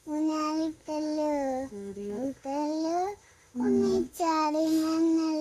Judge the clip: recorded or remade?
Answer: remade